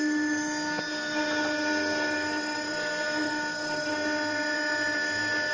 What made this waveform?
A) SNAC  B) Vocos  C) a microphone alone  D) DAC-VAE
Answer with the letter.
C